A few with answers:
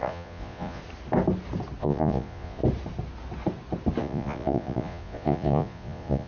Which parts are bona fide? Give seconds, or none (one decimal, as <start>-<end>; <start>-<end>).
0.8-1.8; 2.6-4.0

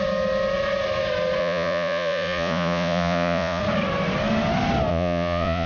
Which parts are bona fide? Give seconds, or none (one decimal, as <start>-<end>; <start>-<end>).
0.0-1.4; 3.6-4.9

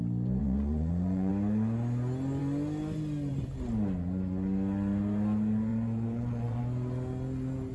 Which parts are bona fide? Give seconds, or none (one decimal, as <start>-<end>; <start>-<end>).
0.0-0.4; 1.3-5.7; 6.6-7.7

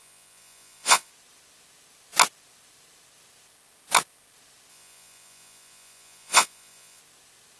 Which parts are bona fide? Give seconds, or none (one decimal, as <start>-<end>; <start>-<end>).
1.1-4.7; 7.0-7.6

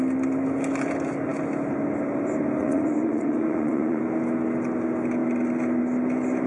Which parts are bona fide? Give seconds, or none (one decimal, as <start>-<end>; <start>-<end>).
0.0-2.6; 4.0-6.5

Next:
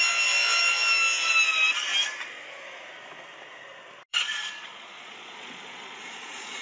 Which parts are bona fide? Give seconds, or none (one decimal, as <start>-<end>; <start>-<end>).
0.0-4.1

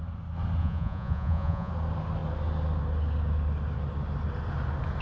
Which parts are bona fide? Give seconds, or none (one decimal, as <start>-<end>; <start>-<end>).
0.0-0.6; 1.7-5.0